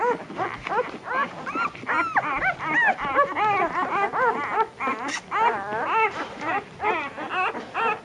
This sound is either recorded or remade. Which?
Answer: recorded